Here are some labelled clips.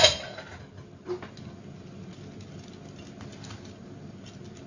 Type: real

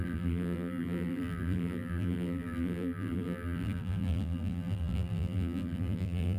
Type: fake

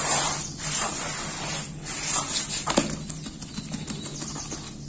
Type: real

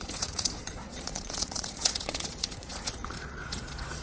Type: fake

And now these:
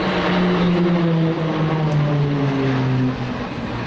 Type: real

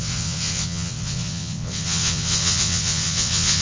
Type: fake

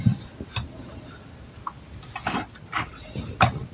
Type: real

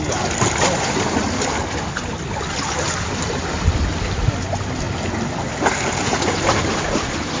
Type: real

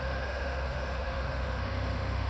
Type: fake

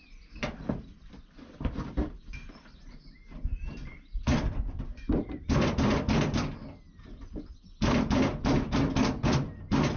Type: fake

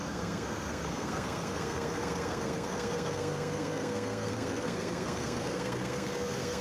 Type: fake